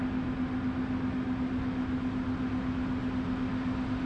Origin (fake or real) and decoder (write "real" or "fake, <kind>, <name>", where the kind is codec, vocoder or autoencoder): real